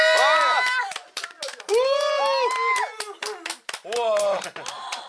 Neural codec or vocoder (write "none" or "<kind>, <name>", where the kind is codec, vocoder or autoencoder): none